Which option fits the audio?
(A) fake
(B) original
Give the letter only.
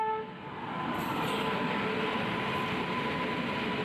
B